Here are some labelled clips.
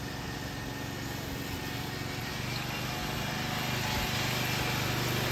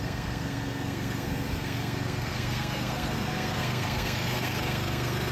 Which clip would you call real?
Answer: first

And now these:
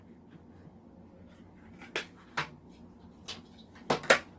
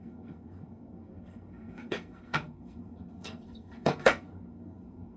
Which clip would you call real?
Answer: first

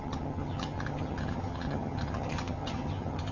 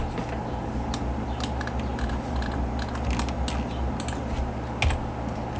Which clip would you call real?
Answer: second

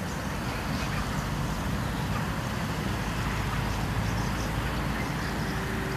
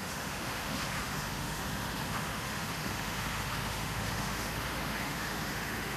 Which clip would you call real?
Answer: first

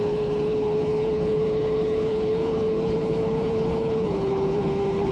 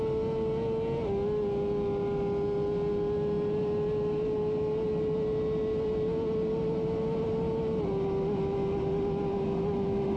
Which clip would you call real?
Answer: second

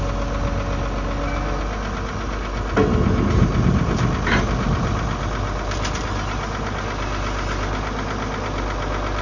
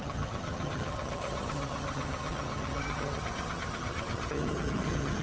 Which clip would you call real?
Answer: first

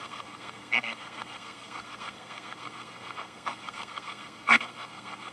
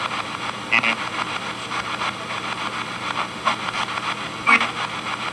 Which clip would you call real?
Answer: second